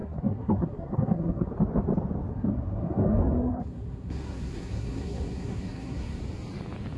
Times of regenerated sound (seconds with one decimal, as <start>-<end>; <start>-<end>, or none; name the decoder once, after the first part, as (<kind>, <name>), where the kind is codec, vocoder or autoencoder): 0.0-1.5 (codec, SNAC); 2.3-6.2